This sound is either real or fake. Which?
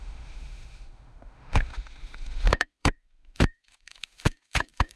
fake